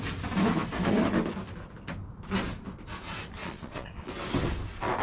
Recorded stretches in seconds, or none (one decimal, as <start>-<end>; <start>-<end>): 0.0-3.4; 4.1-5.0